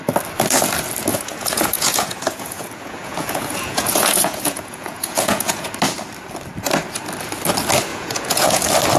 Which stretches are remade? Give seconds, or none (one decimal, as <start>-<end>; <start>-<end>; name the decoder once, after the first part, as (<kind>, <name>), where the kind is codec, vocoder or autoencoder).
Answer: 1.1-5.7 (vocoder, Vocos); 7.9-8.6